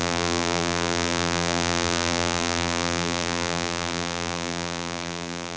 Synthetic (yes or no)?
yes